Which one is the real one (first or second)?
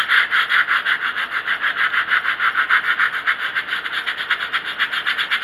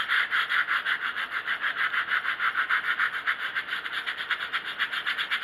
first